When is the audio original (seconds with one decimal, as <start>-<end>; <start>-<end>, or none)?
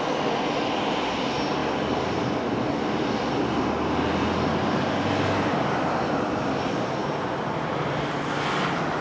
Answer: 0.0-9.0